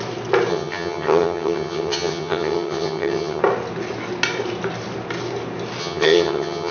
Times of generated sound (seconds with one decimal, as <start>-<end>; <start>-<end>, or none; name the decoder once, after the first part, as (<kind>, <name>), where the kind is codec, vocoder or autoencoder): 0.5-3.4 (vocoder, HiFi-GAN); 5.8-6.7